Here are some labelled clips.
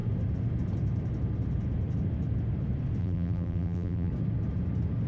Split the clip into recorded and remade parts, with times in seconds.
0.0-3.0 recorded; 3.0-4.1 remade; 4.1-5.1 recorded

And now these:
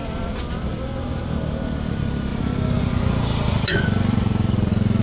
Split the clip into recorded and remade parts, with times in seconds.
0.0-2.3 remade; 2.3-3.2 recorded; 3.2-5.0 remade

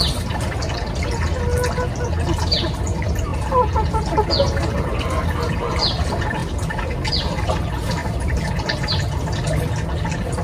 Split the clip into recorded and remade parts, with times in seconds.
0.0-8.0 recorded; 8.0-8.5 remade; 8.5-10.4 recorded

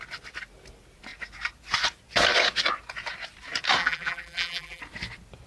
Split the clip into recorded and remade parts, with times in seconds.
0.0-3.8 recorded; 3.8-4.8 remade; 4.8-5.5 recorded

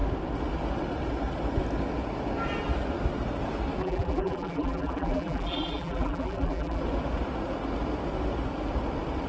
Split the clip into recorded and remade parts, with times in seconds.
0.0-3.8 recorded; 3.8-6.8 remade; 6.8-9.3 recorded

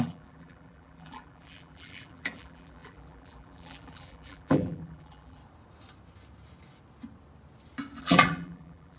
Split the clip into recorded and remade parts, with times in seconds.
0.0-5.4 remade; 5.4-8.0 recorded; 8.0-9.0 remade

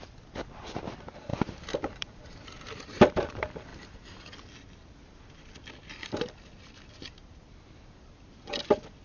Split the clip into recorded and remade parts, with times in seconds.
0.0-1.3 recorded; 1.3-3.0 remade; 3.0-9.0 recorded

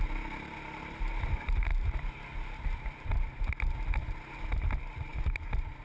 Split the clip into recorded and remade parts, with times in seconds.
0.0-1.7 recorded; 1.7-3.5 remade; 3.5-5.8 recorded